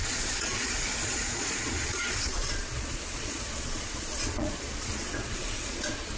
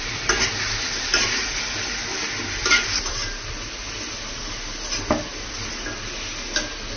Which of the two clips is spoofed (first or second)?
first